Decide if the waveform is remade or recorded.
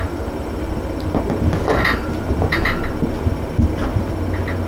recorded